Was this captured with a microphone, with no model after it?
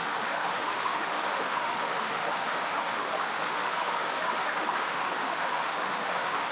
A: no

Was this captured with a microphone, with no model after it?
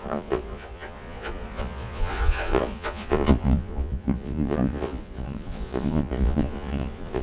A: no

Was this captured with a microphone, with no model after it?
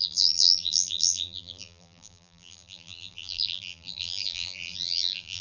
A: no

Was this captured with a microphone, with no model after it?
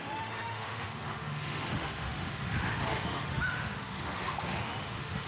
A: no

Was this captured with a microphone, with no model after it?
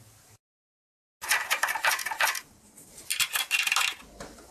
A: yes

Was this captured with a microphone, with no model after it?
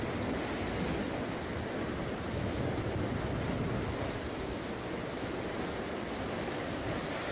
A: yes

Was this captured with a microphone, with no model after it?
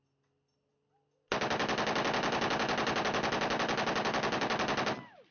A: yes